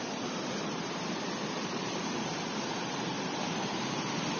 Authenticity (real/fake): fake